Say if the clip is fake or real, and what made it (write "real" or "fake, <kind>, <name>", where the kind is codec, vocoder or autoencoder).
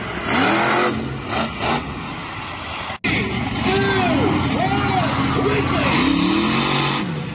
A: real